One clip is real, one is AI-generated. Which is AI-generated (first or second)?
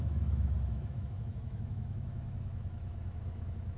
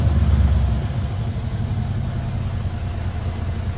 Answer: first